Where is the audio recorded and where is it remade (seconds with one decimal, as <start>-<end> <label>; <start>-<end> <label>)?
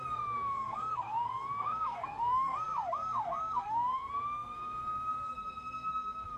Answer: 0.0-6.4 remade